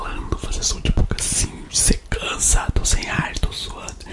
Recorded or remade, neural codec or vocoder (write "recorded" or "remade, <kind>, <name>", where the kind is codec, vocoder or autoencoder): recorded